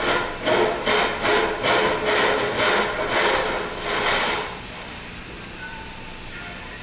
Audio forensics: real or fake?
real